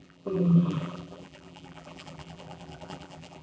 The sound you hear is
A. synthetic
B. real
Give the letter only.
A